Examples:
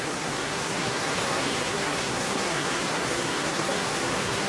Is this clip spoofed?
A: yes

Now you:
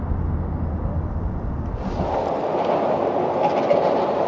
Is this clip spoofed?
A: no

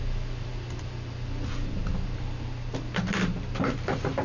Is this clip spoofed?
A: no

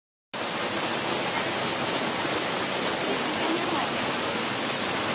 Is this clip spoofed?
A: no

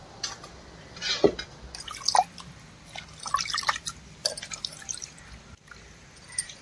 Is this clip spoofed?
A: no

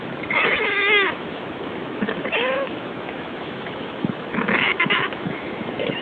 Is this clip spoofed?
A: yes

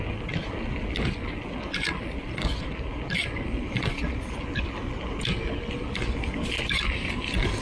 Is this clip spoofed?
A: no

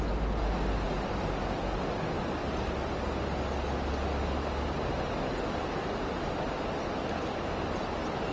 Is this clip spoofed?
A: no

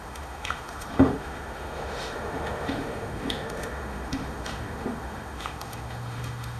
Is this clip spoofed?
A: yes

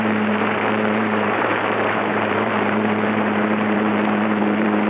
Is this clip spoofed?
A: yes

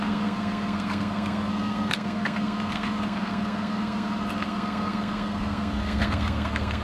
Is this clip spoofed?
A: yes